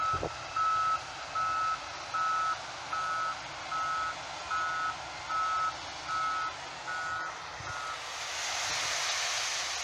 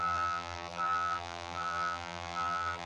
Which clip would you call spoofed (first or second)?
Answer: second